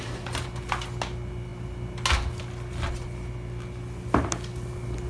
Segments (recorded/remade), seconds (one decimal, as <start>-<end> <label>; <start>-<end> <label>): 0.0-5.1 recorded